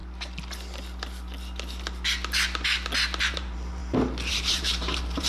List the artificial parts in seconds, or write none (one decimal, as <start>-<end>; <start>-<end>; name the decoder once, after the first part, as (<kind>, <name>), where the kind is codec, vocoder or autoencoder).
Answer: 3.2-3.8 (vocoder, BigVGAN v2); 4.3-5.3